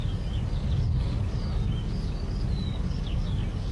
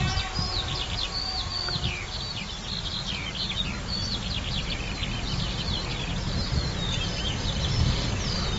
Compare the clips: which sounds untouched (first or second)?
second